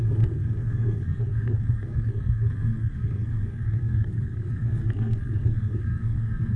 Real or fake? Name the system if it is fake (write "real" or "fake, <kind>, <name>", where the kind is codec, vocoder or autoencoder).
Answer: fake, codec, SNAC